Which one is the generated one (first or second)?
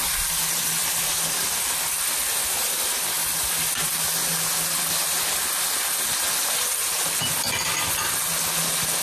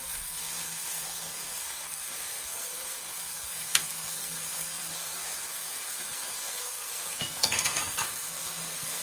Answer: second